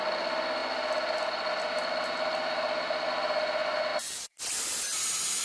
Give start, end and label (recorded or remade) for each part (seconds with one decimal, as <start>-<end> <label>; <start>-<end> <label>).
0.0-5.4 recorded